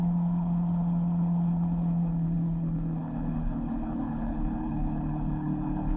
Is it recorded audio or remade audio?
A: remade